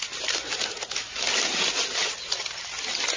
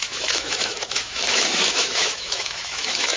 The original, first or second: first